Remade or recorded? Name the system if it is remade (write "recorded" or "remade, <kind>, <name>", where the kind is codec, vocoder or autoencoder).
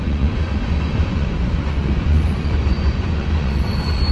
remade, vocoder, Vocos